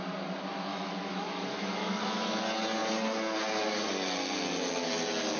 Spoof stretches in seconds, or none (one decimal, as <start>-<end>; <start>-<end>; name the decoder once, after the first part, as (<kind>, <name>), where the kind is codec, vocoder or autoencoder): 0.7-2.4 (autoencoder, DAC-VAE)